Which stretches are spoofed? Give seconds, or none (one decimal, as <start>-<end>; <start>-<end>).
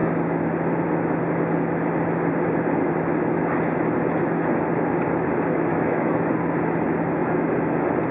5.7-6.3